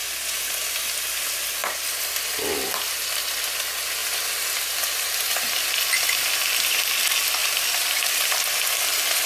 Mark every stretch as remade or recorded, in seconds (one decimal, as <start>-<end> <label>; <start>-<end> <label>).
0.0-1.6 recorded; 1.6-2.1 remade; 2.1-7.4 recorded; 7.4-9.3 remade